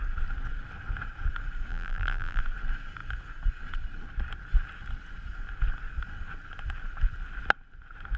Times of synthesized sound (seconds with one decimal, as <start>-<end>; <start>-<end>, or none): 1.7-2.4